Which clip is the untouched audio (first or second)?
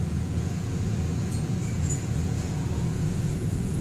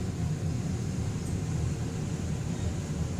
second